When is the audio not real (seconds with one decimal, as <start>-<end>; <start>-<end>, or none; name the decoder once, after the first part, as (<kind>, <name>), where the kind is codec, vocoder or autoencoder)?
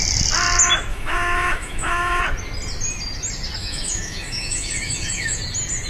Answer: 0.9-2.2 (autoencoder, DAC-VAE); 3.6-5.4